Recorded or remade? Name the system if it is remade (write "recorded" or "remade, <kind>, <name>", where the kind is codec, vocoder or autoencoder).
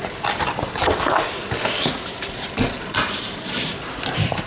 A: recorded